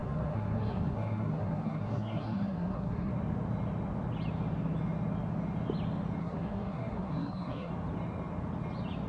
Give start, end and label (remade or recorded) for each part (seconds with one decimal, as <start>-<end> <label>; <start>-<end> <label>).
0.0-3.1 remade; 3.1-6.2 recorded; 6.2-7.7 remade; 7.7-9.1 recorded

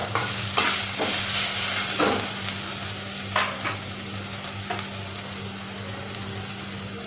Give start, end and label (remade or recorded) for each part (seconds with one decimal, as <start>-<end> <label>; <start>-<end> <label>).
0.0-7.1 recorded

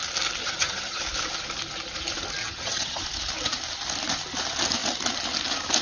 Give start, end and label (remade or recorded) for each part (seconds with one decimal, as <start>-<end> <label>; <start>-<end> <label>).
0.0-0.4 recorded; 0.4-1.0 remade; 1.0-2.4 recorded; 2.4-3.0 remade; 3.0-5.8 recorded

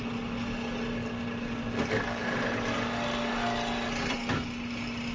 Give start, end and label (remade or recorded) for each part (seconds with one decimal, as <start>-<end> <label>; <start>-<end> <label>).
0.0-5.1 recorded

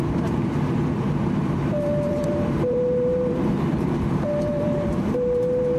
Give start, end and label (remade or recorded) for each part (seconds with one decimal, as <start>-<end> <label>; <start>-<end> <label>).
0.0-5.8 remade

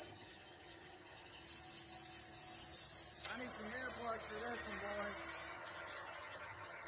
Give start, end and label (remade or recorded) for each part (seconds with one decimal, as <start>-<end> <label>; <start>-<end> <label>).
0.0-1.4 remade; 1.4-5.5 recorded; 5.5-6.9 remade